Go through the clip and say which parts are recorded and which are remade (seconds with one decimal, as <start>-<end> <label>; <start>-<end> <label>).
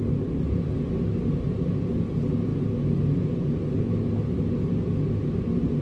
0.0-5.8 recorded